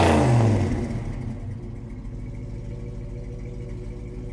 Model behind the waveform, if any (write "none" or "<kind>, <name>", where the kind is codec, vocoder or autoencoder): none